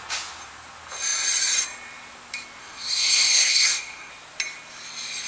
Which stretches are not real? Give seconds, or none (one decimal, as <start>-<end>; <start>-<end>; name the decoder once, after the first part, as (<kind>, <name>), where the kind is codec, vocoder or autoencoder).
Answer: 2.6-4.1 (codec, SNAC)